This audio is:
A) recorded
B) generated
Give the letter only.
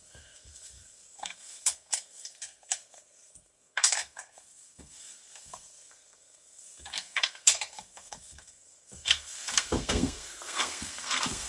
B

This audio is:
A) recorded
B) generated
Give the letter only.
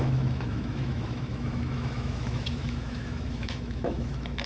B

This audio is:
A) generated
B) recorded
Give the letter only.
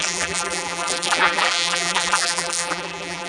A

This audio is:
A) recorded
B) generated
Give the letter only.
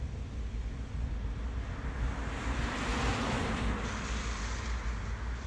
A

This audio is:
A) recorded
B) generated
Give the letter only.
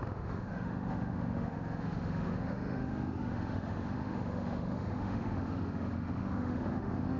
B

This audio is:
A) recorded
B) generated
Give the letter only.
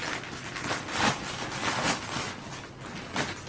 A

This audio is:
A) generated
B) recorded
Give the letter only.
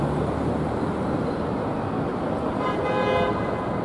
B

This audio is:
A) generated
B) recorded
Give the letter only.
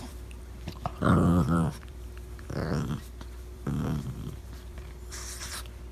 A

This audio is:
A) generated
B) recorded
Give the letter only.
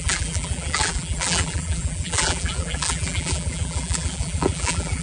A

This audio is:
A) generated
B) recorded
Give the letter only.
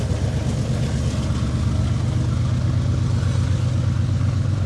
B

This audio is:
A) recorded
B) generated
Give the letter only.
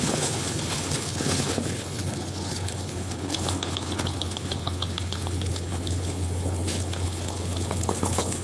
B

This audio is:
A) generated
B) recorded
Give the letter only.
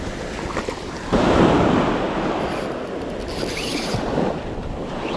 B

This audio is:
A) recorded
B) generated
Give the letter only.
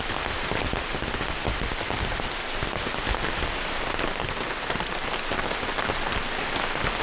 A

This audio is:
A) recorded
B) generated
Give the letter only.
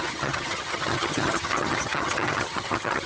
B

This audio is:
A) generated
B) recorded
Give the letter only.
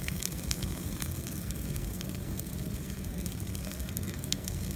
A